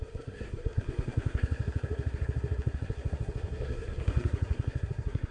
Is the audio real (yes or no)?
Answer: no